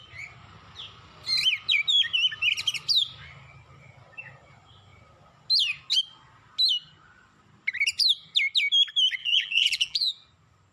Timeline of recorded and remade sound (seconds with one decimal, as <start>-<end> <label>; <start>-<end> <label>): 0.0-9.2 recorded; 9.2-10.1 remade; 10.1-10.7 recorded